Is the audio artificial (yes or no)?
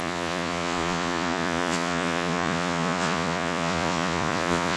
yes